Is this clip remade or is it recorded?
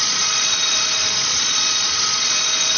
remade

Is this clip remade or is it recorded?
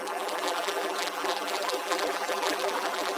remade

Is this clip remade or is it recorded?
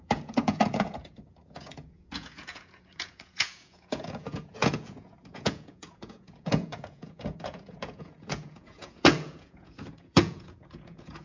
remade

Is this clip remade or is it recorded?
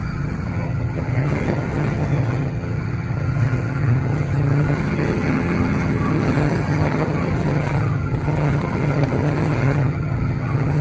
remade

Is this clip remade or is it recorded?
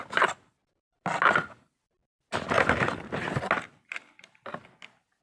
recorded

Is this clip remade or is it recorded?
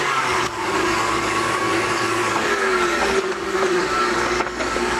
remade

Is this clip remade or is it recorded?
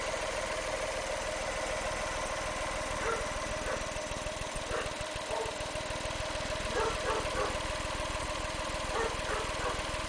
recorded